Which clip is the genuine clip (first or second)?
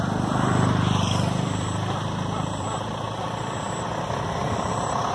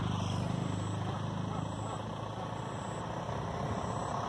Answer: second